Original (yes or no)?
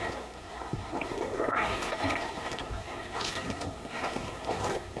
no